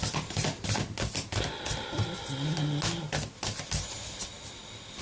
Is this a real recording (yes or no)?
yes